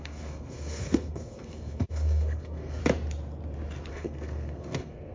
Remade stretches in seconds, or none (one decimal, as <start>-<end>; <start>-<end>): 0.0-2.8; 3.9-5.1